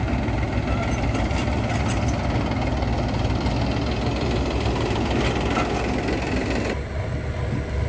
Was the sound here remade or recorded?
recorded